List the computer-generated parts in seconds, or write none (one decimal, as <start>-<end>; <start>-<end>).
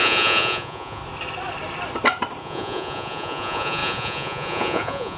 0.0-1.0; 2.4-5.2